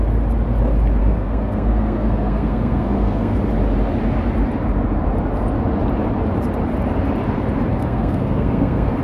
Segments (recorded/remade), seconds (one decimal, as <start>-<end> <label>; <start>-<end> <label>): 0.0-1.0 recorded; 1.0-3.4 remade; 3.4-7.7 recorded; 7.7-9.0 remade